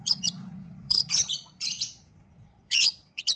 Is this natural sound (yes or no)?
no